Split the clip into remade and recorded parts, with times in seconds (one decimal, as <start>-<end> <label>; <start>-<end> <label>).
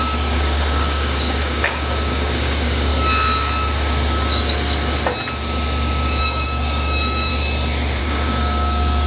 0.0-2.9 remade; 2.9-6.2 recorded; 6.2-7.3 remade; 7.3-8.0 recorded; 8.0-9.1 remade